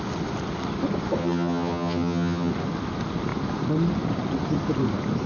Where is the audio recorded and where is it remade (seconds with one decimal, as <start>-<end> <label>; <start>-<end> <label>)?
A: 0.0-1.2 recorded; 1.2-2.5 remade; 2.5-5.3 recorded